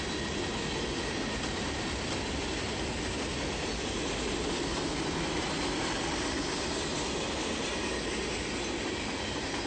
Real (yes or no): yes